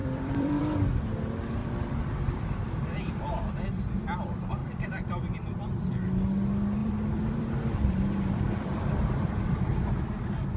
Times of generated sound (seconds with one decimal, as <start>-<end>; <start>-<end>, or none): 0.0-0.6; 1.6-2.7; 4.6-6.0; 6.8-9.9

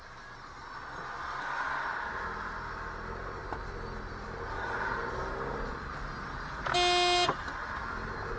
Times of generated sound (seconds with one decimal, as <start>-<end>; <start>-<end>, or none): none

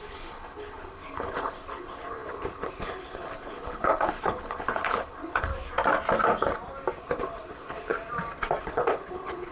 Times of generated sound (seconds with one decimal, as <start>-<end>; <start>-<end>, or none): 0.0-5.5; 7.0-7.9; 8.6-9.5

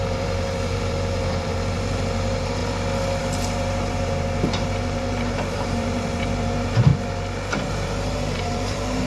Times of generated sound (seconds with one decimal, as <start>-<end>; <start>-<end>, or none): 0.0-2.6; 3.2-6.9; 7.7-9.1